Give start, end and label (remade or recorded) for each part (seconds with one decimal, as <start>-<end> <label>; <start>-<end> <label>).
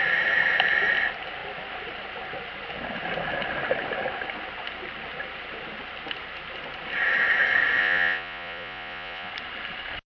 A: 0.0-7.8 recorded; 7.8-9.3 remade; 9.3-10.1 recorded